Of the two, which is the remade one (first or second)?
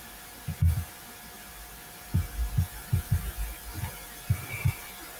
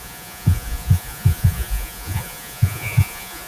second